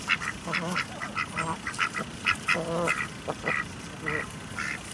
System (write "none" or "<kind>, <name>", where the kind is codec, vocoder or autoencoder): none